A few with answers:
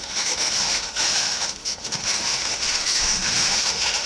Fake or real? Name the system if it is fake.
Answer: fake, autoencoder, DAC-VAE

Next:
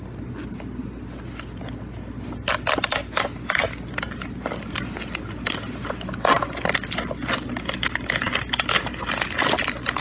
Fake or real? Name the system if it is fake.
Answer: real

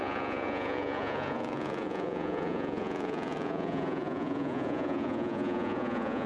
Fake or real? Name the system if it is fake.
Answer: fake, vocoder, Vocos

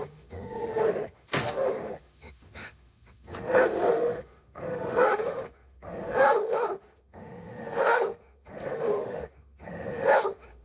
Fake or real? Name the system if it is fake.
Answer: fake, autoencoder, DAC-VAE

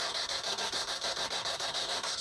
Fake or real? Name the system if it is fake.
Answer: fake, codec, SNAC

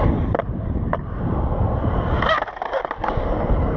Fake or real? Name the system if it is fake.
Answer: real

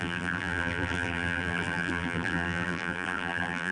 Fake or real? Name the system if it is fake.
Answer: fake, vocoder, BigVGAN v2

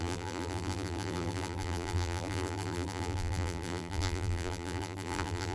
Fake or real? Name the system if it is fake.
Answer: fake, vocoder, BigVGAN v2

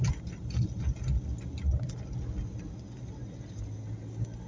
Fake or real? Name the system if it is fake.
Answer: real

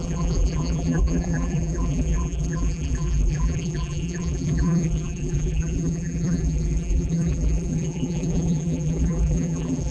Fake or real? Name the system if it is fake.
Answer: fake, vocoder, BigVGAN v2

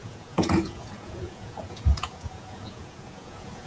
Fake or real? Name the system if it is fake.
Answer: fake, vocoder, Vocos